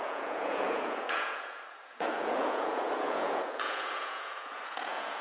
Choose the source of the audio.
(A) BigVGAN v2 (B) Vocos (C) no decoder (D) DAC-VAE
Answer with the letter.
B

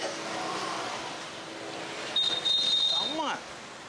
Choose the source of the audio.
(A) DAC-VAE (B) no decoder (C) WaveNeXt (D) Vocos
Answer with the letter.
B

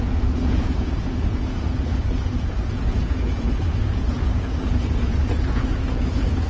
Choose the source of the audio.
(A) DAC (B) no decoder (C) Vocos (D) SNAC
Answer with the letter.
C